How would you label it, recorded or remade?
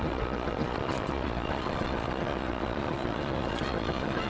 remade